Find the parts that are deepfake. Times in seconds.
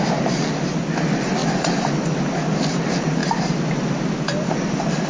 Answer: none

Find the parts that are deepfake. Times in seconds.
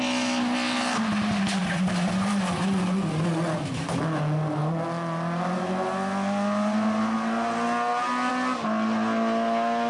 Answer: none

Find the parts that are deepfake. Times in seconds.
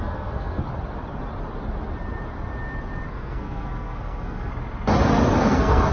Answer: 0.0-0.6 (codec, SNAC); 3.1-4.5; 5.4-5.9